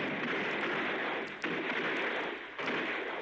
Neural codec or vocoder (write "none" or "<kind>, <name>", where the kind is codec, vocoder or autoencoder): none